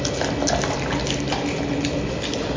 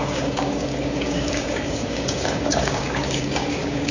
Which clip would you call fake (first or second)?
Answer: second